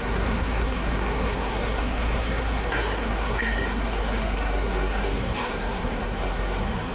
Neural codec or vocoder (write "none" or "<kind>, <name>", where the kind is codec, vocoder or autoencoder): codec, SNAC